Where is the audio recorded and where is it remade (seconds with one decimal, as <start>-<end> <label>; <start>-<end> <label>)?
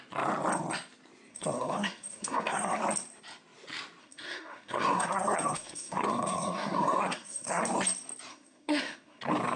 0.0-1.3 recorded; 1.3-2.8 remade; 2.8-4.0 recorded; 4.0-7.6 remade; 7.6-8.3 recorded; 8.3-9.2 remade; 9.2-9.6 recorded